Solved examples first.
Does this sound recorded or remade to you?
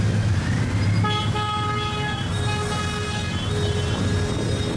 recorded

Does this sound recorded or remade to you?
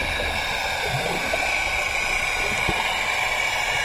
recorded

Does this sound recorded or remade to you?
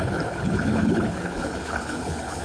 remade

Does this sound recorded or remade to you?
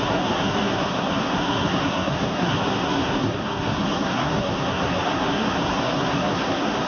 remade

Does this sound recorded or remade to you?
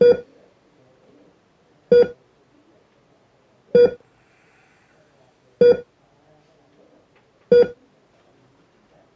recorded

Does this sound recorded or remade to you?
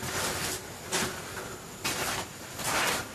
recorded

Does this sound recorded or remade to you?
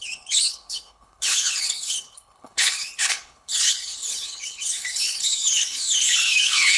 remade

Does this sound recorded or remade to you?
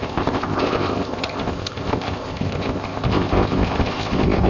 remade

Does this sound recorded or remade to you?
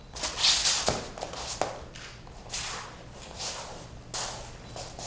recorded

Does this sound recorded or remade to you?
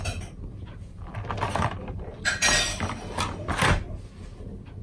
recorded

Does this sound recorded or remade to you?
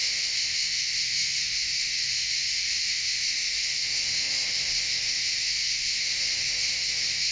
remade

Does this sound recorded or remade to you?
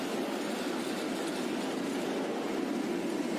recorded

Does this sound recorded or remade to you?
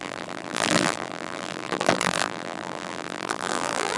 remade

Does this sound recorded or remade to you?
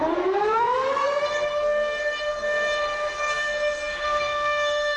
remade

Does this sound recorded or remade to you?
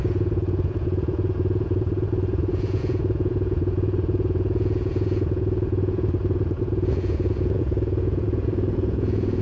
remade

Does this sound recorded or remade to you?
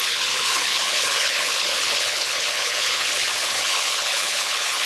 remade